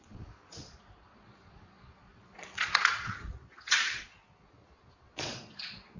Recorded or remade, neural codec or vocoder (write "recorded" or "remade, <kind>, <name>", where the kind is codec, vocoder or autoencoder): remade, vocoder, Vocos